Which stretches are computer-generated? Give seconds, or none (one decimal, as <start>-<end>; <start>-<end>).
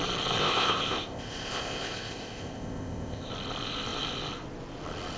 0.4-3.3